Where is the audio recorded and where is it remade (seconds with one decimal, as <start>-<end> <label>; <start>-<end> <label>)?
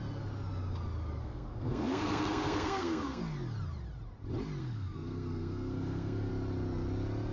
0.0-1.2 recorded; 1.2-3.2 remade; 3.2-4.6 recorded; 4.6-6.3 remade; 6.3-7.3 recorded